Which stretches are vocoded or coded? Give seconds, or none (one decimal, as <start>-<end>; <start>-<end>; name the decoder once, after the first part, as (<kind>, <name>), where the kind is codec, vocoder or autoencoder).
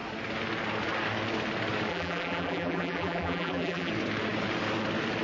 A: 1.9-3.9 (vocoder, BigVGAN v2)